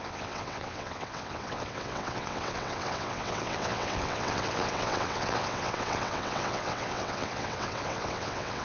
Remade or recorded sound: remade